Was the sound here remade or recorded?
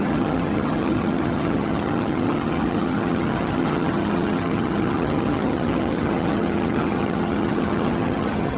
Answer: remade